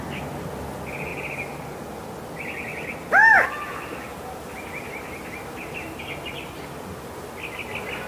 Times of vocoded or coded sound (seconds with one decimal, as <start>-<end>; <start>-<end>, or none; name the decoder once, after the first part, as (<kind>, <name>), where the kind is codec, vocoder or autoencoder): none